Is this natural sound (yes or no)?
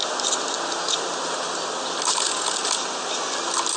yes